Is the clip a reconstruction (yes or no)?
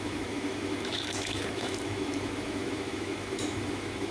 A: yes